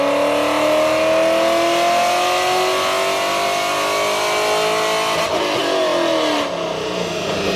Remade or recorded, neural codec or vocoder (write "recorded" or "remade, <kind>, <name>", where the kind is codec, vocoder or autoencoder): recorded